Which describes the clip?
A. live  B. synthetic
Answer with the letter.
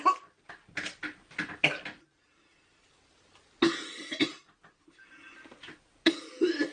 A